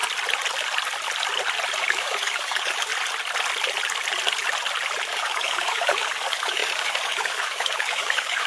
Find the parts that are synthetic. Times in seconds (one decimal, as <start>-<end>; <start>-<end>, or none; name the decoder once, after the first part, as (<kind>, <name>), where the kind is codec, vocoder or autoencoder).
1.8-2.9 (codec, DAC); 5.1-8.5

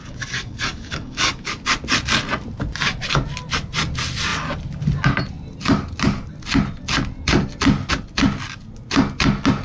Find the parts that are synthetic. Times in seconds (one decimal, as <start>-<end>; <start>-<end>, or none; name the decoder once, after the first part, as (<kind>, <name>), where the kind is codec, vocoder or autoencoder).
0.0-1.6 (codec, DAC)

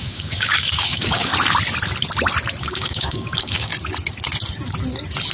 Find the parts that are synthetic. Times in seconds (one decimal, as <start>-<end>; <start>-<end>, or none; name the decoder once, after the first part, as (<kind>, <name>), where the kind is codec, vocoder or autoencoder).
0.0-1.3 (codec, DAC); 2.6-3.7

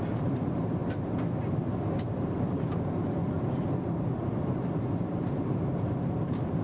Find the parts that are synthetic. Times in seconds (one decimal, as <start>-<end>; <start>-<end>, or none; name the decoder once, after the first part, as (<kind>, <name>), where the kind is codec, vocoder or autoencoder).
none

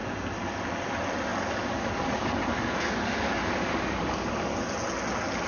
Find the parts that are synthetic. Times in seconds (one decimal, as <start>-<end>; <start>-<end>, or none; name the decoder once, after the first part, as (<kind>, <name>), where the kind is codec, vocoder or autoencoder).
1.3-4.6 (codec, DAC)